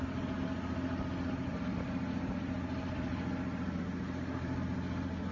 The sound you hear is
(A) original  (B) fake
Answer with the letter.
A